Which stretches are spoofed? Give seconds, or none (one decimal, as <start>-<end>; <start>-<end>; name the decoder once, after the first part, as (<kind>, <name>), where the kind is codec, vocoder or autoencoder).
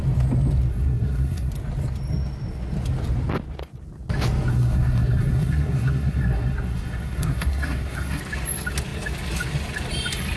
0.7-1.5 (codec, SNAC); 4.5-8.2